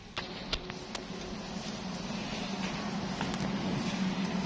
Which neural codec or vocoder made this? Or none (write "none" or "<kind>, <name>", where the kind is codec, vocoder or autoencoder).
none